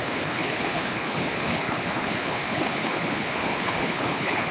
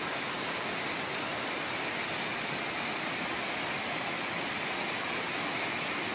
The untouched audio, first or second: second